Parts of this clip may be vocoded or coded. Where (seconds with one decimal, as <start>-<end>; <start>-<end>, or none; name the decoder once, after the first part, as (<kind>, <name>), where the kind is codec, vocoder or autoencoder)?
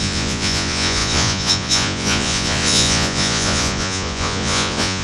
0.0-5.0 (vocoder, Vocos)